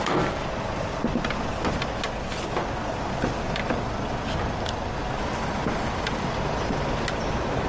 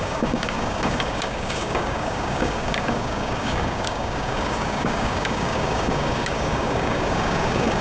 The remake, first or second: second